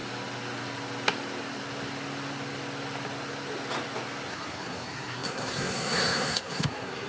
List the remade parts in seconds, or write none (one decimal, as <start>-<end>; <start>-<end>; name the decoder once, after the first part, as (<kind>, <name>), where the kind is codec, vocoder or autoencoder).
4.3-7.1 (codec, SNAC)

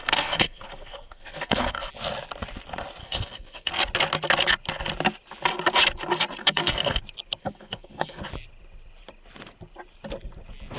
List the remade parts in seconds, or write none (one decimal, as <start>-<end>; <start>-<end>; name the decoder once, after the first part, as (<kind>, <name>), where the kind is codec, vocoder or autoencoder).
0.0-1.9 (codec, SNAC); 3.0-3.7; 6.4-7.0; 7.4-8.2

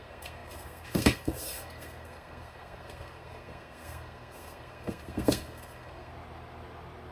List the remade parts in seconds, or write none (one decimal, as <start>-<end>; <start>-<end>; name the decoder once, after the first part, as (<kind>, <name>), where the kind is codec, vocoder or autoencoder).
0.0-6.1 (codec, SNAC)

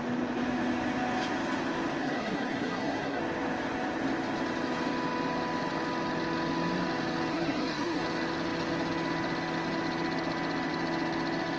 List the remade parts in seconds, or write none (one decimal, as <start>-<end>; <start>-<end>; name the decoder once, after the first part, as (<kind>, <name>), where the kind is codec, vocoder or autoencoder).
2.0-3.2 (codec, SNAC); 7.3-8.0

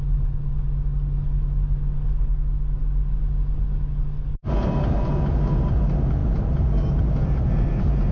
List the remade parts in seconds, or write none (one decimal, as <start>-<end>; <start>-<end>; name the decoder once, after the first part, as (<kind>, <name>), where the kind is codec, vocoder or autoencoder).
none

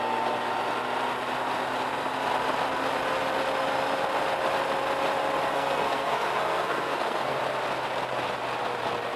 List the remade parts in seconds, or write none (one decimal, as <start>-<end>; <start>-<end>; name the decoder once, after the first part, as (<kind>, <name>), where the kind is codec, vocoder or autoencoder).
5.5-7.4 (codec, SNAC)

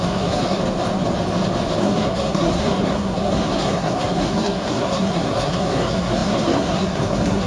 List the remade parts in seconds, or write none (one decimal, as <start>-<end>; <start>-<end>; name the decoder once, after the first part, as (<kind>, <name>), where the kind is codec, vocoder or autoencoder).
0.0-0.6 (codec, SNAC); 1.8-7.5